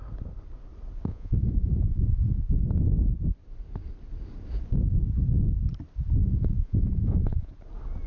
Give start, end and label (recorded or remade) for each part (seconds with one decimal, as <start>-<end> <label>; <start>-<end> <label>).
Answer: 0.0-1.1 recorded; 1.1-2.4 remade; 2.4-6.2 recorded; 6.2-7.5 remade; 7.5-8.1 recorded